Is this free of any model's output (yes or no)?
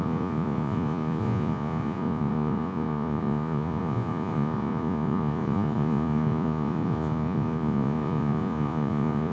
no